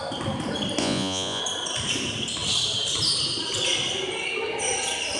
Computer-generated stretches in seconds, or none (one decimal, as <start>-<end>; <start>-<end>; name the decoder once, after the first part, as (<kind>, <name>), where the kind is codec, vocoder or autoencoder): 0.8-1.4 (vocoder, Vocos)